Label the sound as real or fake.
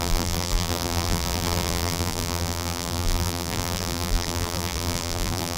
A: fake